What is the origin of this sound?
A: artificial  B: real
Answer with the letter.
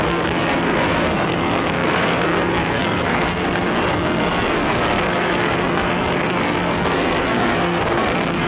A